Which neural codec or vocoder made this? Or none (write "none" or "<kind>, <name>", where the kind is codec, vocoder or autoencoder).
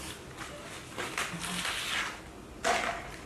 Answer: none